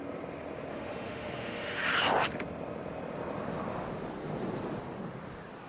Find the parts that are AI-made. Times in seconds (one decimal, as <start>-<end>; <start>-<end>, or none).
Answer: 0.7-1.8